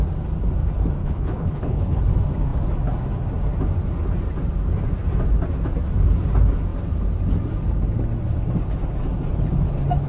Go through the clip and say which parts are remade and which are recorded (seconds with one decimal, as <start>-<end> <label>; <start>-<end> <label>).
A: 0.0-1.0 recorded; 1.0-2.0 remade; 2.0-10.1 recorded